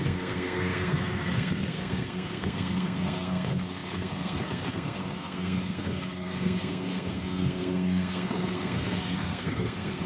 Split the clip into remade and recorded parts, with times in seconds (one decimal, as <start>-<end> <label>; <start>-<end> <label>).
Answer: 0.0-10.1 remade